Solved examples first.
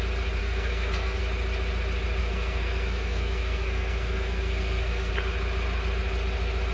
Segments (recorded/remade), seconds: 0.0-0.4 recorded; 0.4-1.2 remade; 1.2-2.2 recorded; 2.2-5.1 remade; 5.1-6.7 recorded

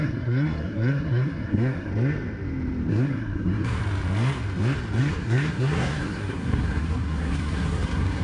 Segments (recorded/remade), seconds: 0.0-1.9 remade; 1.9-2.9 recorded; 2.9-3.8 remade; 3.8-5.0 recorded; 5.0-8.2 remade

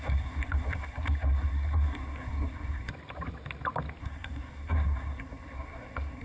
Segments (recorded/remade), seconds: 0.0-2.9 remade; 2.9-4.0 recorded; 4.0-6.2 remade

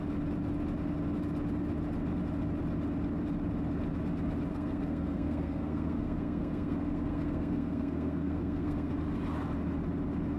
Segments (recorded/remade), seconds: 0.0-4.5 recorded; 4.5-8.9 remade; 8.9-10.4 recorded

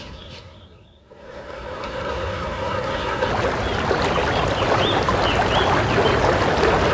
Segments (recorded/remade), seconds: 0.0-3.3 remade; 3.3-6.9 recorded

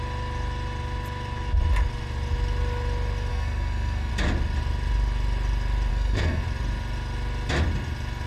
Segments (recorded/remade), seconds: 0.0-3.3 recorded; 3.3-4.1 remade; 4.1-5.9 recorded; 5.9-6.4 remade; 6.4-8.3 recorded

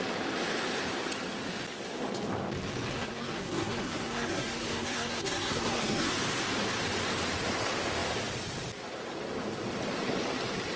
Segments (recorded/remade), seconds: 0.0-2.9 recorded; 2.9-6.1 remade; 6.1-10.8 recorded